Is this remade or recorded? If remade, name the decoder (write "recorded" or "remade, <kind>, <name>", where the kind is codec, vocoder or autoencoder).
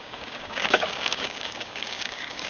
remade, codec, DAC